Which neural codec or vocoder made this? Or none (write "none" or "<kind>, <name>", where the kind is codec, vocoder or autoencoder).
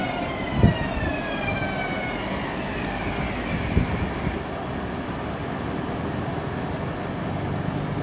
none